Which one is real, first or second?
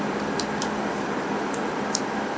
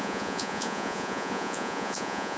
first